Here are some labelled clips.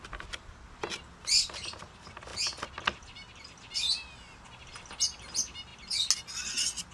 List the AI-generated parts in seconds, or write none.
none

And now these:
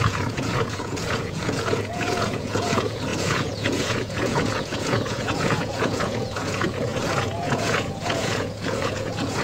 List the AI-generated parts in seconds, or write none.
0.0-9.4 (vocoder, Vocos)